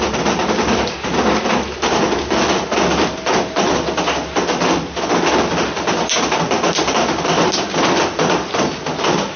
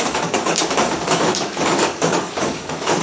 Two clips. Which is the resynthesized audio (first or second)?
second